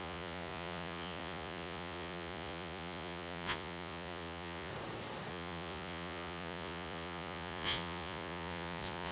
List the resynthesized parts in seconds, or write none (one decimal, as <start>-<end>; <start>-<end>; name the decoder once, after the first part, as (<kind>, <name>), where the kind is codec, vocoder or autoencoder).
0.0-4.7 (vocoder, Vocos); 5.3-9.1